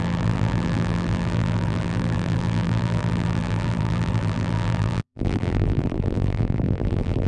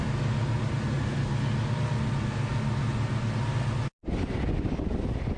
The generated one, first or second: first